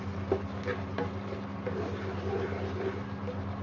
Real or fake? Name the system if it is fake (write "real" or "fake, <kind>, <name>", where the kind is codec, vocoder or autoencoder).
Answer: real